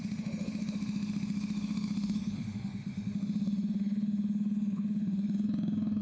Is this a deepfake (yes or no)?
yes